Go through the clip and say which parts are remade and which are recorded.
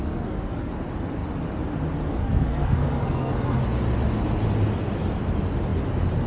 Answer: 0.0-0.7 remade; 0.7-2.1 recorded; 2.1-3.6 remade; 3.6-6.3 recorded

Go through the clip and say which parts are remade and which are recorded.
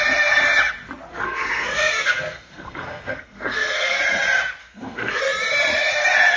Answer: 0.0-1.1 recorded; 1.1-4.0 remade; 4.0-4.6 recorded; 4.6-5.2 remade; 5.2-6.4 recorded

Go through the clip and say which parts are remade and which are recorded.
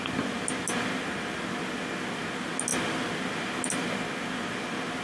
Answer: 0.0-5.0 recorded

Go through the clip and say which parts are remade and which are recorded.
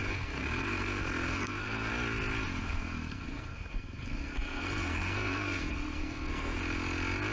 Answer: 0.0-1.9 remade; 1.9-2.6 recorded; 2.6-6.6 remade; 6.6-7.3 recorded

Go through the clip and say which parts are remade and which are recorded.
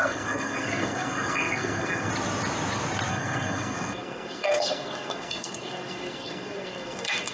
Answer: 0.0-2.1 remade; 2.1-3.1 recorded; 3.1-7.3 remade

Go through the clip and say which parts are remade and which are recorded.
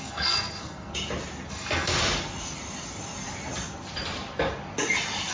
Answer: 0.0-0.9 remade; 0.9-1.5 recorded; 1.5-1.9 remade; 1.9-5.3 recorded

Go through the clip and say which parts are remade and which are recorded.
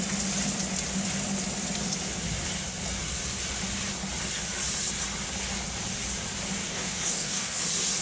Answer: 0.0-6.6 recorded; 6.6-7.6 remade; 7.6-8.0 recorded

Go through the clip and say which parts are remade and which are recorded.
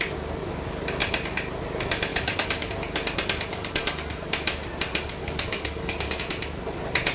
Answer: 0.0-2.1 recorded; 2.1-2.7 remade; 2.7-3.5 recorded; 3.5-4.2 remade; 4.2-5.2 recorded; 5.2-6.2 remade; 6.2-7.1 recorded